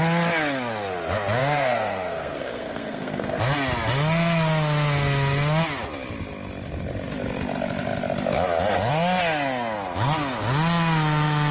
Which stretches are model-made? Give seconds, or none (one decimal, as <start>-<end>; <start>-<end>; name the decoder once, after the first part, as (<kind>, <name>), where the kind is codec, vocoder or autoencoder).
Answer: 1.4-3.4 (codec, SNAC)